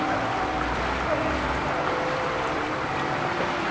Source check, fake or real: fake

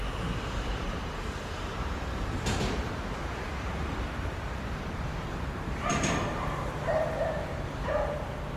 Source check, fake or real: fake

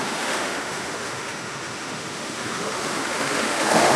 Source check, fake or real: fake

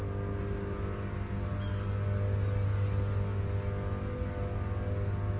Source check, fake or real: real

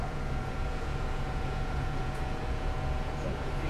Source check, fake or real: fake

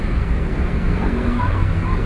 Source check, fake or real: fake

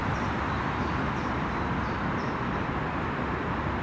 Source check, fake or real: real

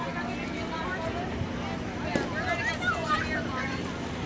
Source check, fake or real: real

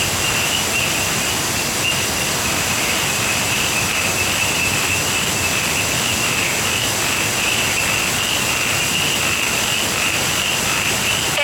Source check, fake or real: real